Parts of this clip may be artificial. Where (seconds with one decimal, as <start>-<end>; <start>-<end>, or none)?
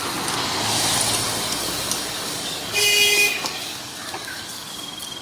1.6-4.7